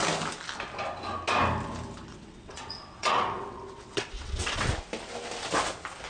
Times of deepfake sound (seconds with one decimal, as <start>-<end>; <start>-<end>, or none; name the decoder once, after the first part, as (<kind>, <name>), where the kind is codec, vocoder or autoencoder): 2.1-4.7 (vocoder, WaveNeXt)